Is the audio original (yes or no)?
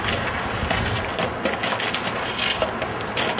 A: yes